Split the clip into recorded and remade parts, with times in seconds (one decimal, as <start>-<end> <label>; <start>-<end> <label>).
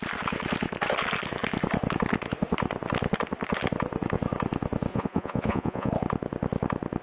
0.0-4.9 recorded; 4.9-5.9 remade; 5.9-7.0 recorded